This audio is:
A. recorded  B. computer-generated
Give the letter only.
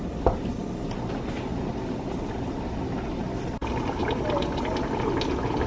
A